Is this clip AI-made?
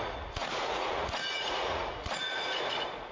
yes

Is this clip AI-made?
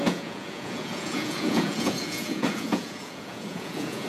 yes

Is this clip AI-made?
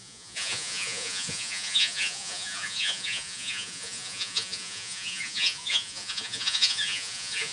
yes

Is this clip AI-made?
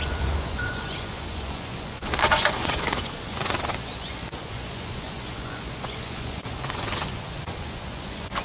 yes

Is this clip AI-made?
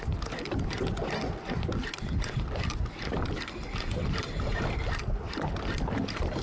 no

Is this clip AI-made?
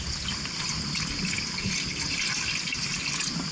no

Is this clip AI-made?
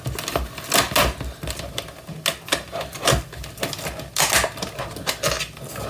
no